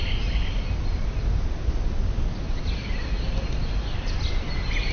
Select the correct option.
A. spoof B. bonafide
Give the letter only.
B